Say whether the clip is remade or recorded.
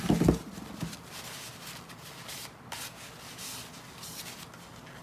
recorded